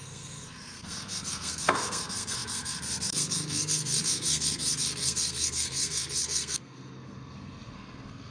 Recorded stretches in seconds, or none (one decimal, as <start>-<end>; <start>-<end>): none